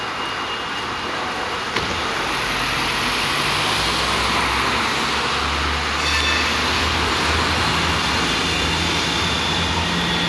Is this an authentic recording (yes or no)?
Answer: yes